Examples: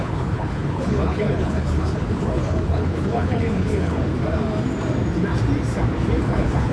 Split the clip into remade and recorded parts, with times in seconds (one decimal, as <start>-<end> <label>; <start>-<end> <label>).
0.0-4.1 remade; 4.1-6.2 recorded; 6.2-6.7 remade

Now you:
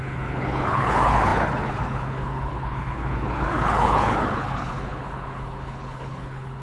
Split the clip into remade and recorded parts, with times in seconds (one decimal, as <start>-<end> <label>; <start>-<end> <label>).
0.0-6.6 remade

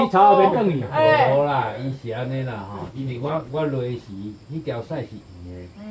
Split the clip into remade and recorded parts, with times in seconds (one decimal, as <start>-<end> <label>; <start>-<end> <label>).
0.0-2.8 recorded; 2.8-3.5 remade; 3.5-5.9 recorded